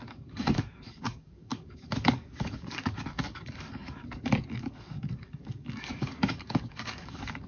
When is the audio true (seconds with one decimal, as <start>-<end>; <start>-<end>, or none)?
none